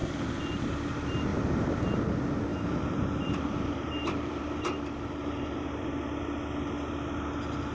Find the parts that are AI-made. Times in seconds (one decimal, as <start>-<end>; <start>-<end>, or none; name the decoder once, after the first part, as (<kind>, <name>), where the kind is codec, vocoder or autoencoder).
0.0-0.9 (vocoder, BigVGAN v2); 1.3-2.0; 2.5-5.9